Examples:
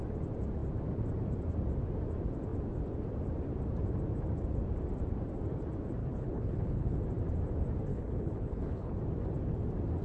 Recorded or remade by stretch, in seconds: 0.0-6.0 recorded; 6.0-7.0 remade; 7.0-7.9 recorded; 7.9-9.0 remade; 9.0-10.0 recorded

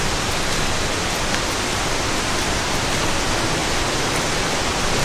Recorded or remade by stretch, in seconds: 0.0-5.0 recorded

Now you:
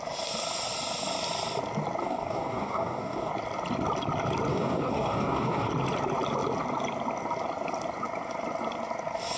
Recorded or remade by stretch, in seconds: 0.0-2.0 recorded; 2.0-3.3 remade; 3.3-4.5 recorded; 4.5-5.7 remade; 5.7-9.4 recorded